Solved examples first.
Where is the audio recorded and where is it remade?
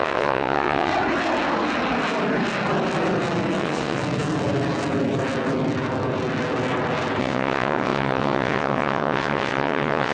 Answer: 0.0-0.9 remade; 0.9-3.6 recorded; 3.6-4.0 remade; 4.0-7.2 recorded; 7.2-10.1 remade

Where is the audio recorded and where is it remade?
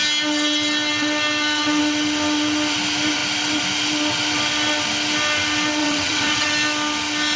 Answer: 0.0-5.8 recorded; 5.8-6.5 remade; 6.5-7.4 recorded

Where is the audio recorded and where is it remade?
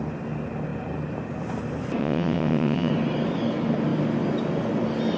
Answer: 0.0-2.0 recorded; 2.0-2.9 remade; 2.9-5.2 recorded